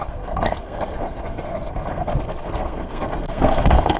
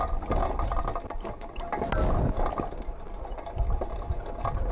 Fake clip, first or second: first